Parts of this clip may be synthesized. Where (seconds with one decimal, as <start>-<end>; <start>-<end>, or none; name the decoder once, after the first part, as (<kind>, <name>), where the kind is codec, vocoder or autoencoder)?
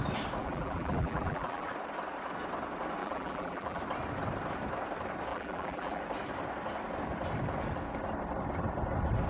0.4-1.7 (vocoder, BigVGAN v2); 3.0-3.8; 5.3-6.0